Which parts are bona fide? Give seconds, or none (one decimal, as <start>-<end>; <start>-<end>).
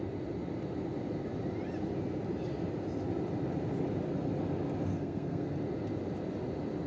0.0-4.9; 5.5-6.9